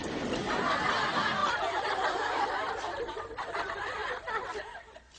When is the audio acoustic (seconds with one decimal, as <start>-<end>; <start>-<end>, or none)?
0.0-1.4; 3.3-5.2

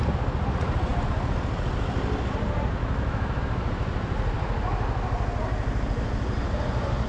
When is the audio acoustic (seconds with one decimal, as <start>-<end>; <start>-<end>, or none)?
0.0-2.8; 3.4-7.1

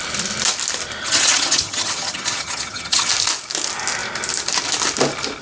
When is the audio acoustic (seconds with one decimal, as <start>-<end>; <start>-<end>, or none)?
0.0-1.0; 3.1-5.4

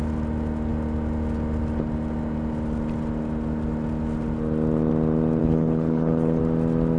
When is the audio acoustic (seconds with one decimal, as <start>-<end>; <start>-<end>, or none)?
0.0-5.4; 6.4-7.0

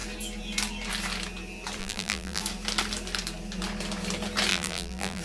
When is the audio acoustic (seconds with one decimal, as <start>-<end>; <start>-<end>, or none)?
0.0-1.8; 2.4-4.5

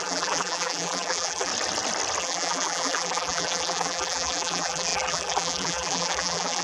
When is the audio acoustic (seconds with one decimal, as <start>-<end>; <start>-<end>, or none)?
1.5-2.2

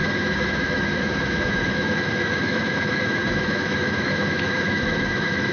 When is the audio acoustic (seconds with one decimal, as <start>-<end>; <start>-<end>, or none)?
none